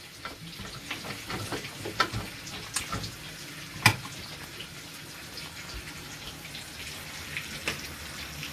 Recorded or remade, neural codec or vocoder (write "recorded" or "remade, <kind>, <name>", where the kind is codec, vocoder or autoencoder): recorded